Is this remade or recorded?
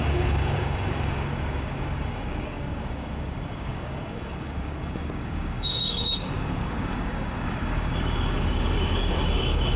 remade